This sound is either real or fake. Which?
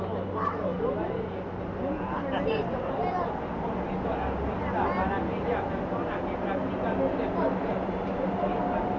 real